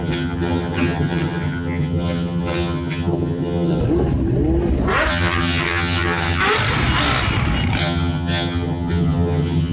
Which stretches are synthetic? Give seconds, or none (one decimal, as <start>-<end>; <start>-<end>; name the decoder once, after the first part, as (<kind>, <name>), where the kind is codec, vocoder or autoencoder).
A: 0.0-3.8 (vocoder, HiFi-GAN); 5.1-6.4; 7.8-9.7